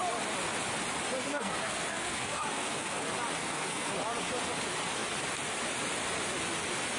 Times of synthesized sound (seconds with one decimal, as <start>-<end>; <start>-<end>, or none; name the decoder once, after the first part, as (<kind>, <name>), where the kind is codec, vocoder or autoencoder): 1.2-3.0 (codec, SNAC); 3.4-3.9

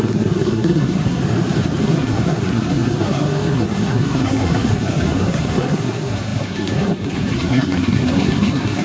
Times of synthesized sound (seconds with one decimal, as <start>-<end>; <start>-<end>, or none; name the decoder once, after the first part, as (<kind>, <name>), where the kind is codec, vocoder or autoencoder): 0.0-1.2 (codec, SNAC); 1.8-8.8